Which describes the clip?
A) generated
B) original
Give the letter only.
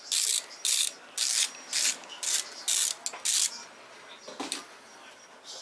B